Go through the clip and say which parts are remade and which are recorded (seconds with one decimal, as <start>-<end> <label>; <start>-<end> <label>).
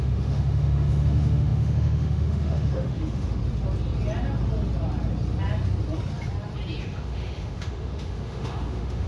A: 0.0-3.4 remade; 3.4-6.8 recorded; 6.8-9.1 remade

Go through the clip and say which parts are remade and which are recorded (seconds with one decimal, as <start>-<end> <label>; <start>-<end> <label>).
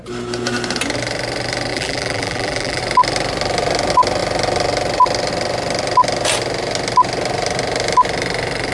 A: 0.0-1.7 recorded; 1.7-2.8 remade; 2.8-8.7 recorded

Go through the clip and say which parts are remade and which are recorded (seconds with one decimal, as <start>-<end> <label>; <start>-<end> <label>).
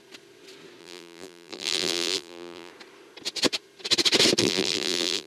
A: 0.0-0.8 recorded; 0.8-2.7 remade; 2.7-4.4 recorded; 4.4-5.3 remade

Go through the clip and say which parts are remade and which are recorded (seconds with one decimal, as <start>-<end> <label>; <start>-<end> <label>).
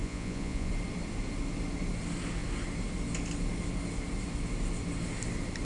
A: 0.0-0.7 remade; 0.7-5.6 recorded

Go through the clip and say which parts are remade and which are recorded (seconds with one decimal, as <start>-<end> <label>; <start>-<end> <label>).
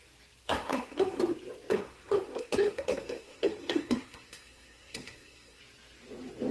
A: 0.0-0.4 recorded; 0.4-1.2 remade; 1.2-1.7 recorded; 1.7-5.6 remade; 5.6-6.5 recorded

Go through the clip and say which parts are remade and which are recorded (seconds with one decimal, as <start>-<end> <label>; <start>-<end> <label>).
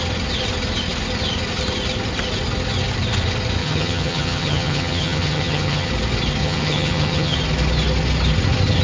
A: 0.0-3.6 recorded; 3.6-5.9 remade; 5.9-6.4 recorded; 6.4-7.4 remade; 7.4-8.8 recorded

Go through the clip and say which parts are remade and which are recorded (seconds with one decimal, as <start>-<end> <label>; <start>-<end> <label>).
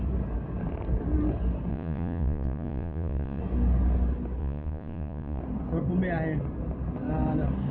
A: 0.0-1.7 recorded; 1.7-3.4 remade; 3.4-4.4 recorded; 4.4-5.4 remade; 5.4-7.7 recorded